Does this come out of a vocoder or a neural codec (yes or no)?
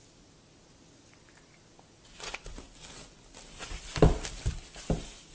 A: no